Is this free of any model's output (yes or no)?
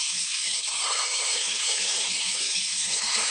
no